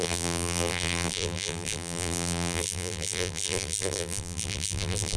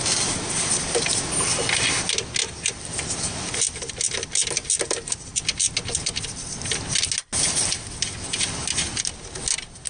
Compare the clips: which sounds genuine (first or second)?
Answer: second